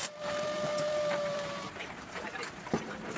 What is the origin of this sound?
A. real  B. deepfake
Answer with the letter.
B